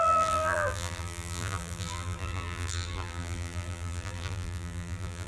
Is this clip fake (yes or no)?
yes